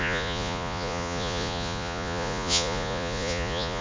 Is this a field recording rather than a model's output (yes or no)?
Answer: no